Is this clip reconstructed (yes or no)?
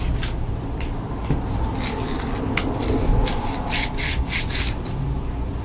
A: no